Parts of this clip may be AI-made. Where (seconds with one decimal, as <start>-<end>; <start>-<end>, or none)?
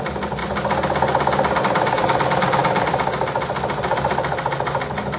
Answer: 0.0-0.4; 1.6-5.2